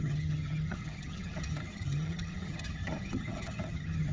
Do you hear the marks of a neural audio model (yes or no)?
yes